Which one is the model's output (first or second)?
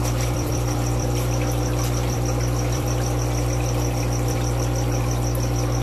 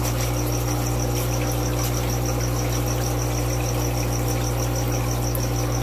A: first